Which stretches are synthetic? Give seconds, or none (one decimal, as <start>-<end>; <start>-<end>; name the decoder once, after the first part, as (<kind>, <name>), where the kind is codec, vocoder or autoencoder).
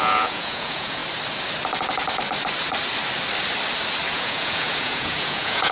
0.0-1.0 (vocoder, Vocos); 4.1-5.7